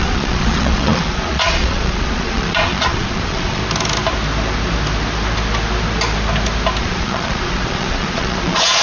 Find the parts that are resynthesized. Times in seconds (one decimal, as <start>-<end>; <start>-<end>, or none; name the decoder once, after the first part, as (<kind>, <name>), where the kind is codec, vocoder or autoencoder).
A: 0.0-3.6 (vocoder, Vocos); 6.8-8.8